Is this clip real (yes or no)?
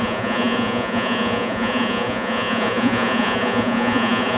no